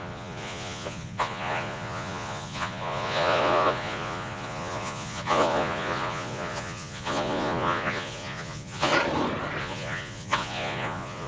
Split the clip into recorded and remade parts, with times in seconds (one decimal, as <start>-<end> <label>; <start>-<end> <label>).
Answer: 0.0-8.9 remade; 8.9-9.6 recorded; 9.6-11.3 remade